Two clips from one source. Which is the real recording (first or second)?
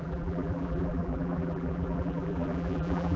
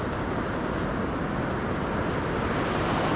second